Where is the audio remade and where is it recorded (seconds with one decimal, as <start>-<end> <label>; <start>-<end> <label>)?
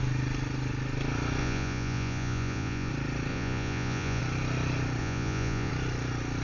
0.0-1.4 recorded; 1.4-2.9 remade; 2.9-3.3 recorded; 3.3-4.2 remade; 4.2-5.0 recorded; 5.0-5.7 remade; 5.7-6.4 recorded